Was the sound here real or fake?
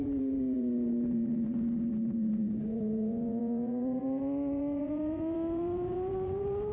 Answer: fake